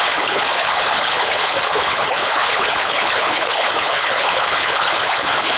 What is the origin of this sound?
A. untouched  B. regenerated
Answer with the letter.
B